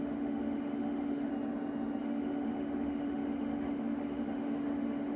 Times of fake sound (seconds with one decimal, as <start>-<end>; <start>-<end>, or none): 0.0-1.3; 2.0-5.2